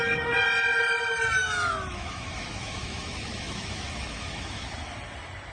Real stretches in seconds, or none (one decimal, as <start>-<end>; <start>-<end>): 0.0-1.4; 4.7-5.5